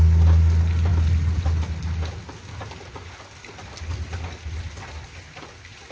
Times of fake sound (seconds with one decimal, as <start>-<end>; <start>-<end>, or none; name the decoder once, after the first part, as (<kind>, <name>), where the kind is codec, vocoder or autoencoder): none